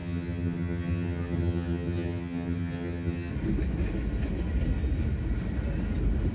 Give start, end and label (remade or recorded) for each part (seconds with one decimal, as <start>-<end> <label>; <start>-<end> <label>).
0.0-3.3 remade; 3.3-6.3 recorded